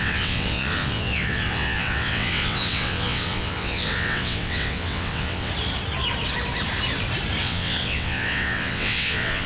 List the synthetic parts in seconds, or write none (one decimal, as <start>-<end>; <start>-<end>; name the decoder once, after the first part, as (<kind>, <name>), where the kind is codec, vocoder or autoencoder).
0.0-5.5 (vocoder, WaveNeXt); 7.4-9.5